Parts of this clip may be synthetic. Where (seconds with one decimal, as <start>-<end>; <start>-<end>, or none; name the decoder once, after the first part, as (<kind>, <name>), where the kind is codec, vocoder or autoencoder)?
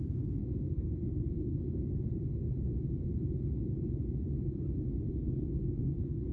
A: 0.0-1.9 (codec, SNAC); 5.1-6.3